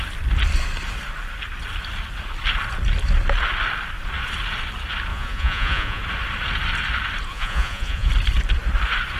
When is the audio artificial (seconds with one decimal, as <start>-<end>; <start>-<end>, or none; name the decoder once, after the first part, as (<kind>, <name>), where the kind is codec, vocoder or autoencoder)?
5.1-6.0 (vocoder, Vocos); 7.3-8.1